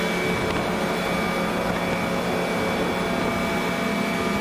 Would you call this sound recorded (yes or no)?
yes